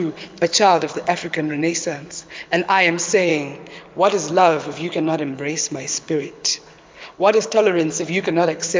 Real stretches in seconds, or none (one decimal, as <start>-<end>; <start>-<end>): 3.3-4.3